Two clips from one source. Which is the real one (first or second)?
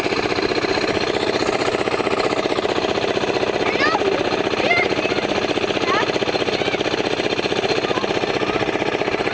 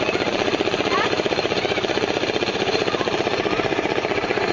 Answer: first